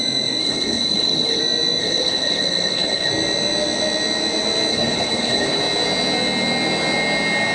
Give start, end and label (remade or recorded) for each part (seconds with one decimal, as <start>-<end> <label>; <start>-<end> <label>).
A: 0.0-0.4 recorded; 0.4-1.4 remade; 1.4-1.8 recorded; 1.8-3.1 remade; 3.1-4.7 recorded; 4.7-5.6 remade; 5.6-7.5 recorded